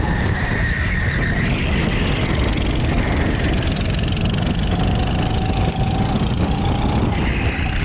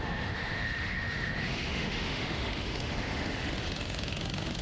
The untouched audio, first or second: first